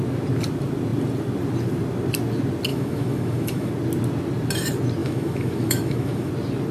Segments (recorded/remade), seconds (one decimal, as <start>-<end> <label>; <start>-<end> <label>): 0.0-2.7 recorded; 2.7-3.7 remade; 3.7-5.0 recorded; 5.0-6.3 remade; 6.3-6.7 recorded